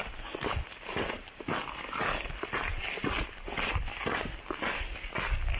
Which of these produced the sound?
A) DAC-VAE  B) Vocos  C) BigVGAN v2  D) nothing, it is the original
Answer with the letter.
D